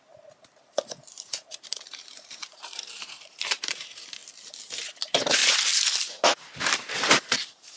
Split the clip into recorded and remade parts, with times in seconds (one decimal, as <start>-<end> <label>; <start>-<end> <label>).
0.0-4.2 remade; 4.2-4.8 recorded; 4.8-5.4 remade; 5.4-6.0 recorded; 6.0-7.8 remade